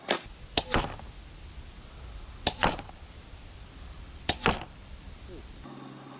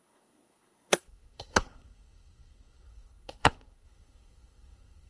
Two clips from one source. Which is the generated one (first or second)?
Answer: second